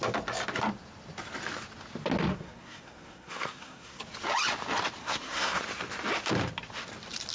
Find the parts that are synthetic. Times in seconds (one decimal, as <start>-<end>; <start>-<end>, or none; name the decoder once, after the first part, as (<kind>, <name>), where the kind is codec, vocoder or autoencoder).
2.3-4.0 (codec, SNAC); 5.0-5.6